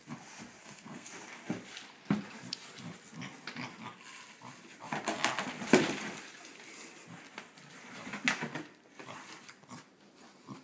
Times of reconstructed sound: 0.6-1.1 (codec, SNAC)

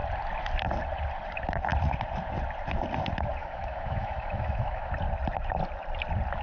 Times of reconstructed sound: 3.4-4.9 (autoencoder, DAC-VAE)

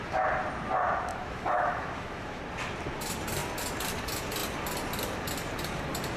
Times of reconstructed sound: 1.1-2.4 (autoencoder, DAC-VAE)

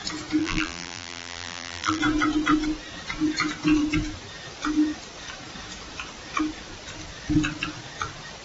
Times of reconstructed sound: 0.4-2.0 (vocoder, BigVGAN v2)

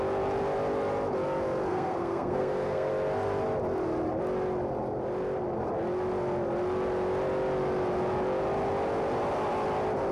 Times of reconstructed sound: 1.7-2.9 (codec, SNAC)

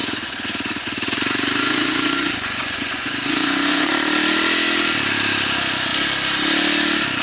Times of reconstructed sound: 0.0-3.9 (vocoder, Vocos)

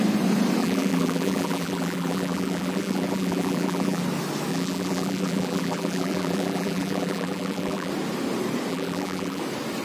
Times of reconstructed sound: 0.6-4.0 (vocoder, BigVGAN v2); 4.5-7.9; 8.7-9.4

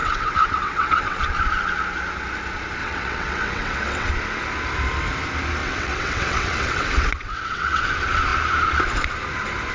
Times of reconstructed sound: 0.0-1.2 (vocoder, WaveNeXt); 2.8-4.1; 5.6-7.8